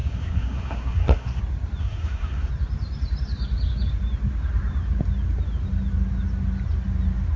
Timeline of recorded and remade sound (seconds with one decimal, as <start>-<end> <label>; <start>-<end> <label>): 0.0-1.4 remade; 1.4-1.8 recorded; 1.8-2.5 remade; 2.5-7.4 recorded

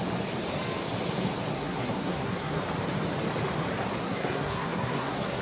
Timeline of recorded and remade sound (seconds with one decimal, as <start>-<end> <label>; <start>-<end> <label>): 0.0-1.5 recorded; 1.5-2.6 remade; 2.6-4.0 recorded; 4.0-5.4 remade